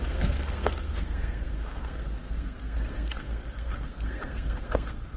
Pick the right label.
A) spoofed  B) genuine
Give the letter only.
A